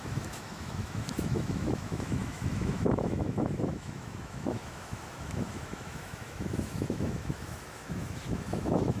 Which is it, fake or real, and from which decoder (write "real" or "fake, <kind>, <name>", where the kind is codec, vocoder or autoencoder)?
fake, autoencoder, DAC-VAE